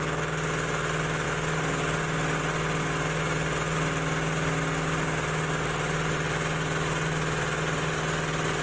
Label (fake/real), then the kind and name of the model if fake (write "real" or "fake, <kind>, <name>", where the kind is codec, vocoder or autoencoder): real